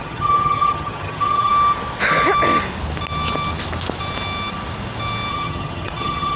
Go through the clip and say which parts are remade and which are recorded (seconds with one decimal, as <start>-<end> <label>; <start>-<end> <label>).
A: 0.0-1.5 remade; 1.5-5.3 recorded; 5.3-6.4 remade